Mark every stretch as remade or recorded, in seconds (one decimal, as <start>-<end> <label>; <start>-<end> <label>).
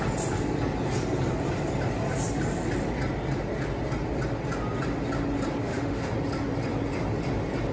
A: 0.0-5.6 recorded; 5.6-6.1 remade; 6.1-7.7 recorded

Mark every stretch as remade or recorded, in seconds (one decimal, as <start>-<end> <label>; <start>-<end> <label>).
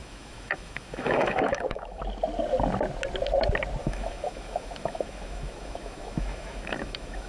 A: 0.0-2.0 remade; 2.0-3.8 recorded; 3.8-7.3 remade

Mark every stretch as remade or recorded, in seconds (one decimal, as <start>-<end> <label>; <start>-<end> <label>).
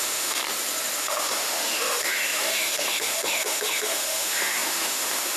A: 0.0-0.4 remade; 0.4-1.0 recorded; 1.0-5.4 remade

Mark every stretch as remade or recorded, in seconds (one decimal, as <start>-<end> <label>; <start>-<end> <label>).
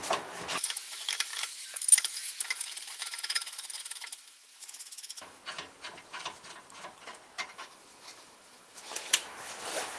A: 0.0-5.4 remade; 5.4-7.5 recorded; 7.5-10.0 remade